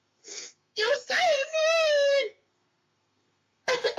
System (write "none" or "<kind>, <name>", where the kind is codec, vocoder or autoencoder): codec, SNAC